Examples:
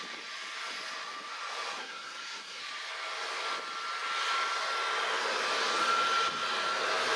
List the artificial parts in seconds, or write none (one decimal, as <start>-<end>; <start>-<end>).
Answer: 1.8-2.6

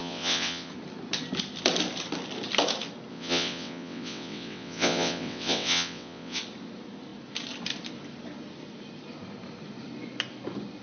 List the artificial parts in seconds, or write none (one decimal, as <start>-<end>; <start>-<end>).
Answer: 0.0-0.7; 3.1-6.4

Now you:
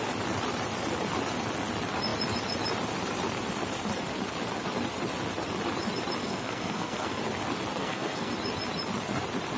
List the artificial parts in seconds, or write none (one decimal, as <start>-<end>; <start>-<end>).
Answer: 6.2-7.2; 7.8-8.3

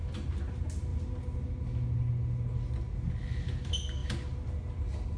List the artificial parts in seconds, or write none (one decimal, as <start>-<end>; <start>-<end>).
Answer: none

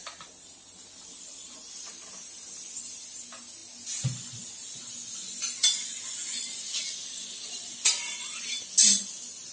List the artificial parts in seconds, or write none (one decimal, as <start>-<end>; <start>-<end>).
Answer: none